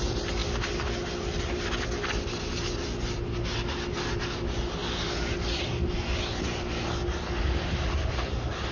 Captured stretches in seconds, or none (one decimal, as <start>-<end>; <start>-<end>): 0.0-8.7